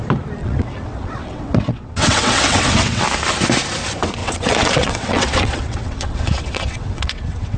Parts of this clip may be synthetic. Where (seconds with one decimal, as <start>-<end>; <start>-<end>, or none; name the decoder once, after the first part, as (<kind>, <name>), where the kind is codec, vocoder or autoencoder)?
0.4-3.0 (vocoder, WaveNeXt); 4.2-7.6